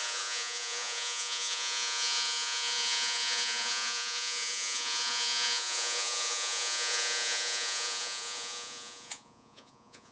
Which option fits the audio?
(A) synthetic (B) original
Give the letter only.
A